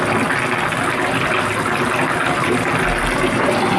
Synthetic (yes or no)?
no